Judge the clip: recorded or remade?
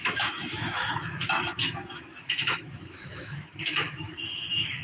remade